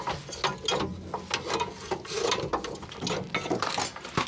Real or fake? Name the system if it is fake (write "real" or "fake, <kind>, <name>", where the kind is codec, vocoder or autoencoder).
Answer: real